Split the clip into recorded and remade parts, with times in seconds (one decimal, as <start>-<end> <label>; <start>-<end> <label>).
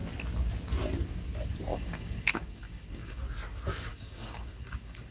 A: 0.0-1.7 recorded; 1.7-3.2 remade; 3.2-3.9 recorded; 3.9-5.1 remade